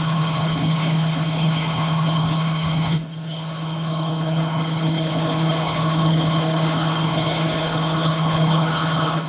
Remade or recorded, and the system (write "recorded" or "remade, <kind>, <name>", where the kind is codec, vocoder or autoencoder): remade, codec, HILCodec